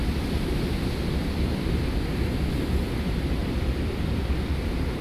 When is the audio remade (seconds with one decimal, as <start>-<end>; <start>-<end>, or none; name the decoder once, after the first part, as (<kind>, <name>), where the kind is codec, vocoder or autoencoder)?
3.4-4.2 (vocoder, BigVGAN v2)